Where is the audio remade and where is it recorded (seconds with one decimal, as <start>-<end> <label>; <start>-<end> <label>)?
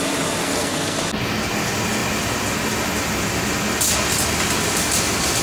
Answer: 0.0-0.4 recorded; 0.4-1.0 remade; 1.0-5.4 recorded